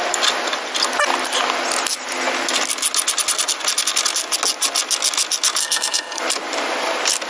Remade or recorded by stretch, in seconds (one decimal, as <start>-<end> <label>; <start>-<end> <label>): 0.0-5.6 recorded; 5.6-6.2 remade; 6.2-7.3 recorded